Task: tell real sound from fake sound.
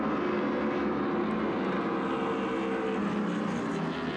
real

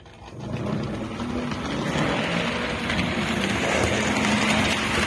real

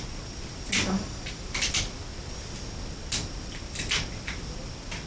real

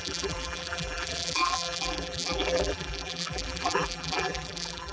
fake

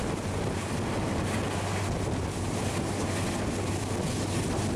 real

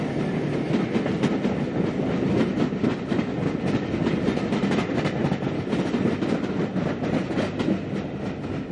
real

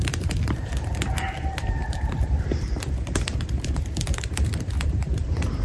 fake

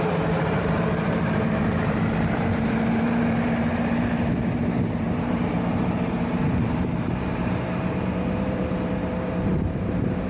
fake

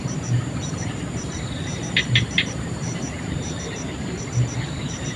fake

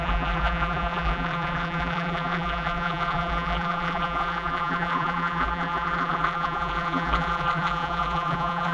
fake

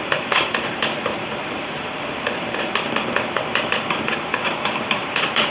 fake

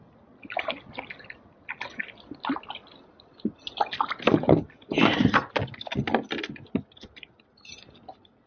real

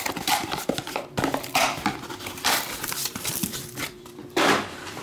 fake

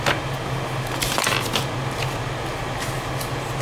real